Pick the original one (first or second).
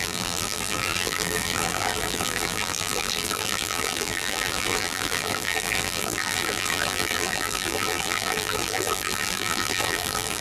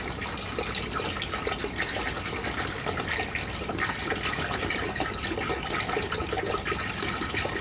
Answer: second